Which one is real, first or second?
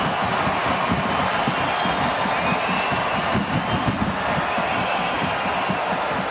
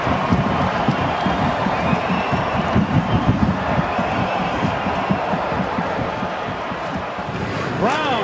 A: first